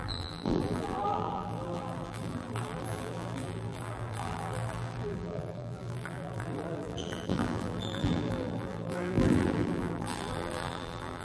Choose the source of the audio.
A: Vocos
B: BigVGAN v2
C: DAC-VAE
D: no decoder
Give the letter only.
B